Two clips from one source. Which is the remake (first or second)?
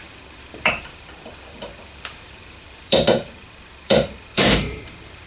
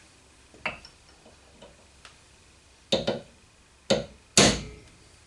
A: first